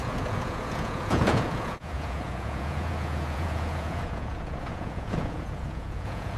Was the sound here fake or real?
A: fake